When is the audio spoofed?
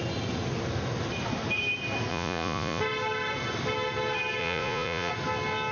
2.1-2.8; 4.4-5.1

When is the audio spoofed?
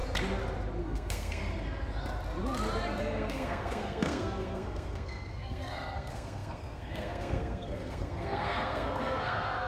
0.8-1.4; 3.0-9.7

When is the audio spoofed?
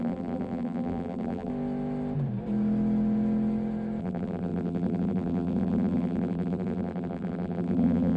0.0-1.5; 4.0-8.2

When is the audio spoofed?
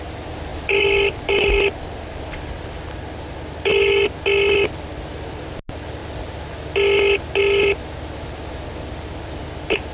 0.5-2.9